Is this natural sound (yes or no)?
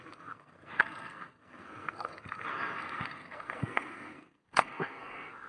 no